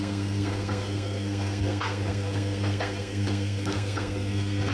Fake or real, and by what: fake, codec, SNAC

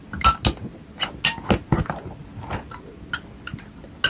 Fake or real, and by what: real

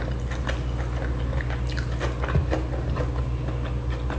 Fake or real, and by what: real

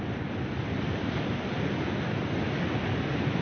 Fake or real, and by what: real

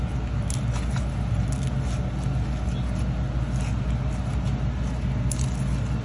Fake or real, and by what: real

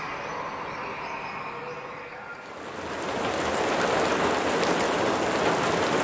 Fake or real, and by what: real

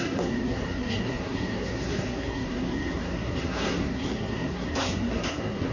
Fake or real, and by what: fake, codec, SNAC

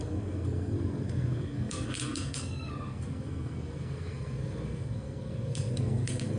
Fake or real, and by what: fake, codec, SNAC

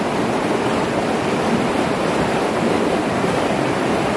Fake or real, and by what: real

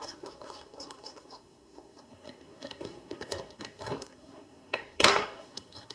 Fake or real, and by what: fake, codec, SNAC